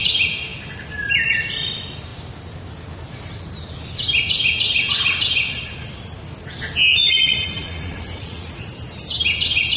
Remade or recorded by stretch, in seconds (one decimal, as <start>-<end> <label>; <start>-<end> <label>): 0.0-7.0 recorded; 7.0-8.7 remade; 8.7-9.8 recorded